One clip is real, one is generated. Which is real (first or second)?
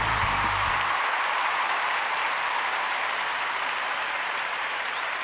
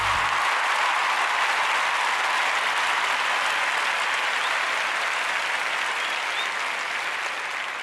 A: second